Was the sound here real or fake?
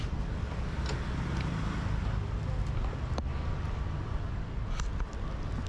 real